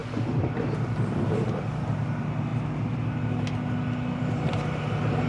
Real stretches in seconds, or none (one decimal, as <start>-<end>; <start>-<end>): 0.0-5.3